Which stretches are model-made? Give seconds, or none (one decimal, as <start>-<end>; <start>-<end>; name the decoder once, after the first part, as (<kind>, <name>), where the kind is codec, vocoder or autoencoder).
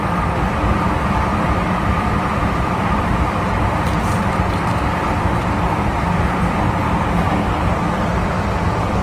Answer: 1.3-3.0 (vocoder, BigVGAN v2)